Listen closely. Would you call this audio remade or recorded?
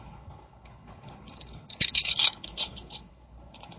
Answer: remade